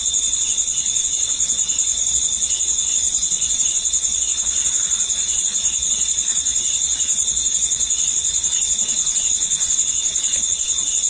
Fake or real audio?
fake